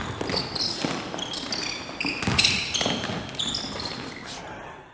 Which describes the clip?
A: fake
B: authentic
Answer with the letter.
B